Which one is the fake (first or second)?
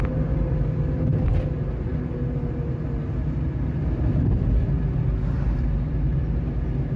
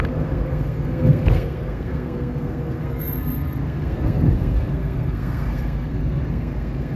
second